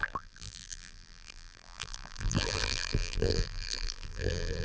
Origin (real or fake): fake